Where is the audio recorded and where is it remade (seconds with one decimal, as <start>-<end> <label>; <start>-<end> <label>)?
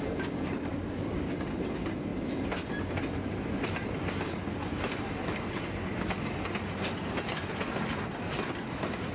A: 0.0-0.7 recorded; 0.7-1.3 remade; 1.3-9.1 recorded